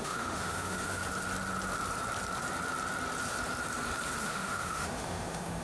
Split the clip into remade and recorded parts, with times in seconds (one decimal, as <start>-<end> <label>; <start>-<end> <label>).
0.0-1.0 remade; 1.0-4.2 recorded; 4.2-5.6 remade